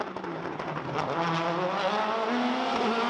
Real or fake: real